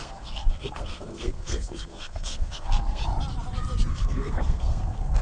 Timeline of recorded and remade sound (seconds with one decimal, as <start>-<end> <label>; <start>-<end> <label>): 0.0-3.0 remade; 3.0-3.9 recorded; 3.9-5.2 remade